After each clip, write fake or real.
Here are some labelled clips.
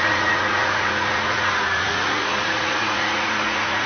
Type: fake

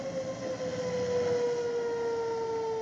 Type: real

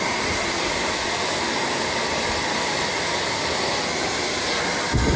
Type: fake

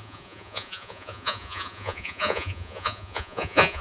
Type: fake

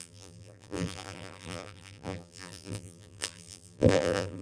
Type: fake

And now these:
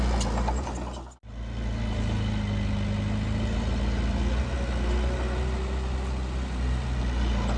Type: real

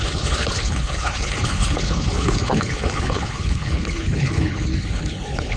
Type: fake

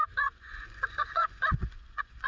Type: fake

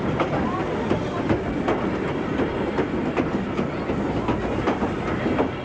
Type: real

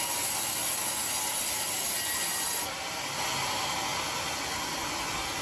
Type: real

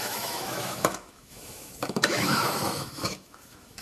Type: fake